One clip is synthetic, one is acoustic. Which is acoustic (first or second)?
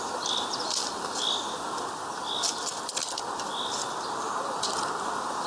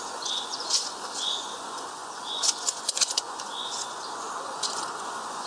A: first